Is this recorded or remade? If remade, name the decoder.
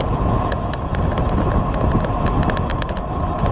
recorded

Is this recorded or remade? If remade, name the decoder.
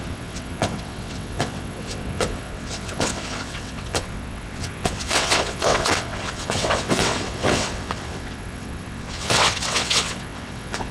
remade, vocoder, WaveNeXt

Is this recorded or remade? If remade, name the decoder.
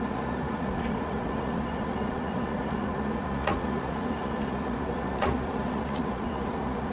remade, vocoder, Vocos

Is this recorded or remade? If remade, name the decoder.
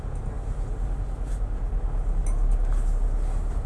recorded